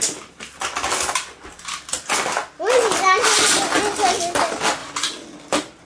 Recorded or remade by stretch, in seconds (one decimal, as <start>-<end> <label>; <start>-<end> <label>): 0.0-5.8 recorded